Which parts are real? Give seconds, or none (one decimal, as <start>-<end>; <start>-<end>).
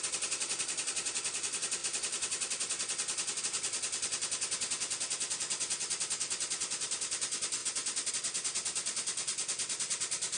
0.0-10.4